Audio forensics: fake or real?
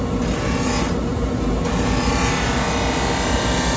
real